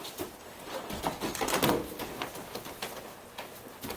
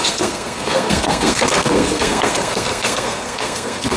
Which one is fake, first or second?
second